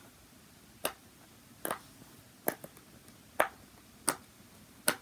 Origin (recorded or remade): recorded